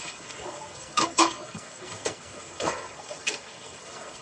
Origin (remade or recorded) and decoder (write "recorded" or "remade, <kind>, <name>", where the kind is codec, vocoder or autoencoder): remade, codec, SNAC